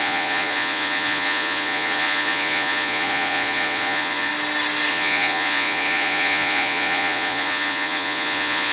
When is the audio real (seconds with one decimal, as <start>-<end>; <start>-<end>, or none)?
4.3-4.9